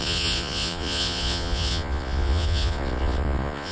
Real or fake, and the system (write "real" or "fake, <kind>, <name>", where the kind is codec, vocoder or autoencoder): fake, vocoder, Vocos